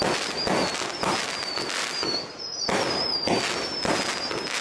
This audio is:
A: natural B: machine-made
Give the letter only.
A